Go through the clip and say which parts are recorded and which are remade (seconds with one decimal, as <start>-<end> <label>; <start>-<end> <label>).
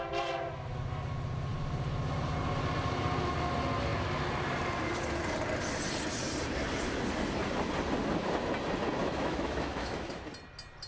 0.0-9.0 recorded; 9.0-10.1 remade; 10.1-10.9 recorded